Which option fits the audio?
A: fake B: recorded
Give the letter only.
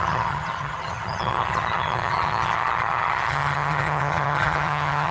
A